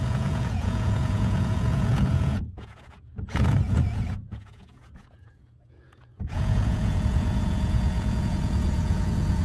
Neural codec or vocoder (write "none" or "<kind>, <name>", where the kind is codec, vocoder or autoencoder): vocoder, Vocos